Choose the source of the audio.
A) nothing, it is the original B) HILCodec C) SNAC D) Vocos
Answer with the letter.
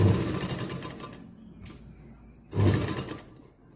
A